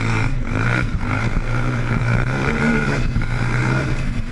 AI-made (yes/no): yes